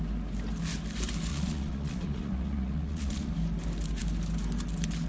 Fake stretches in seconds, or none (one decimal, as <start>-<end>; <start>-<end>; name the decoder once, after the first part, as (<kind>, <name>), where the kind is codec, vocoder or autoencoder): 1.3-3.3 (vocoder, Vocos)